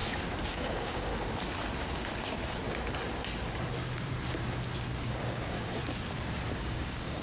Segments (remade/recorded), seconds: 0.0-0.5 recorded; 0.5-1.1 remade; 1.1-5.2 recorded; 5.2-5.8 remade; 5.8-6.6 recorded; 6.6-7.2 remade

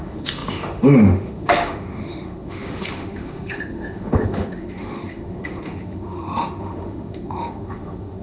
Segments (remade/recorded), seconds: 0.0-8.2 remade

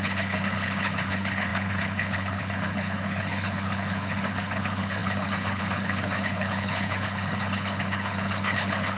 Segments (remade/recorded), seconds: 0.0-9.0 remade

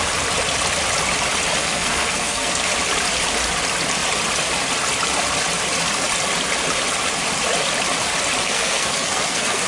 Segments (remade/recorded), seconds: 0.0-1.6 recorded; 1.6-2.7 remade; 2.7-8.4 recorded; 8.4-9.7 remade

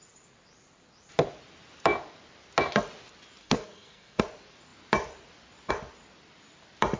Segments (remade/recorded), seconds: 0.0-3.4 recorded; 3.4-4.2 remade; 4.2-7.0 recorded

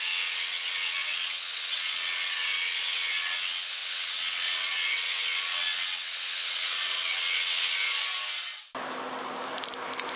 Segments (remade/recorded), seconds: 0.0-7.8 remade; 7.8-10.2 recorded